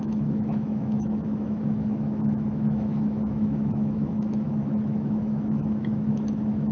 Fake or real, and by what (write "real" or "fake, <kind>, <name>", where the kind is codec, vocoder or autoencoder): fake, autoencoder, DAC-VAE